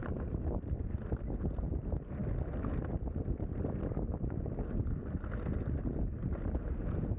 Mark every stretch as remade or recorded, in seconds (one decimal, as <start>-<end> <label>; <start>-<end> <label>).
0.0-7.2 recorded